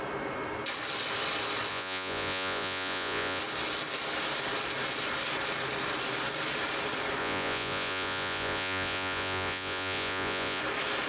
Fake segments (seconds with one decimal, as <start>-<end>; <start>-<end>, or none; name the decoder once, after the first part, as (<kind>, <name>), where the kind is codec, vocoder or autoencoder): 1.7-3.4 (vocoder, Vocos); 7.2-10.6